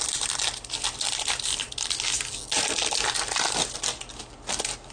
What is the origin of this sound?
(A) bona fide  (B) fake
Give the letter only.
A